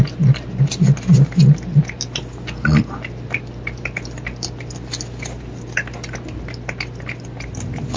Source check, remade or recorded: recorded